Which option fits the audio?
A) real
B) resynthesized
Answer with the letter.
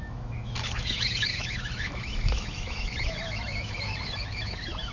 B